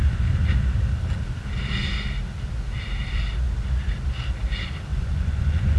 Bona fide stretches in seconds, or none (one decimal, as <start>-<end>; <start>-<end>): 0.0-4.9